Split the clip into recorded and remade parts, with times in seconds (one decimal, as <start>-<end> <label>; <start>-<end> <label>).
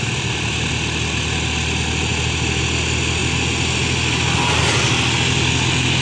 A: 0.0-6.0 recorded